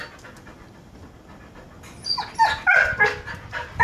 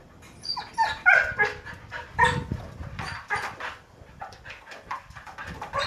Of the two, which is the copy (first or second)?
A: second